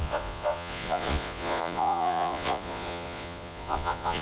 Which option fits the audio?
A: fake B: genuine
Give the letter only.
A